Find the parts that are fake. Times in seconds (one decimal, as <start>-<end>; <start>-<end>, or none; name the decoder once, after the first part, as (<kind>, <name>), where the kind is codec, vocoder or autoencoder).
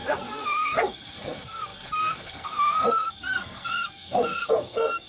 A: 0.0-5.1 (codec, SNAC)